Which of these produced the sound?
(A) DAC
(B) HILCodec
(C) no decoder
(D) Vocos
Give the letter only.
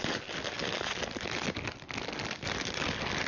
C